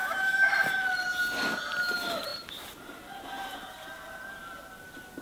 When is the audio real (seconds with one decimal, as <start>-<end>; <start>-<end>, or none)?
0.5-5.2